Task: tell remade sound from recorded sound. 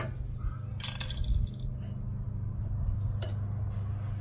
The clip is recorded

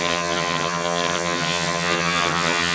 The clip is remade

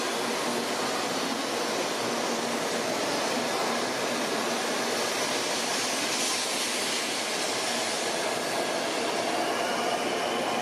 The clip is recorded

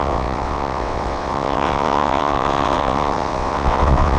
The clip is remade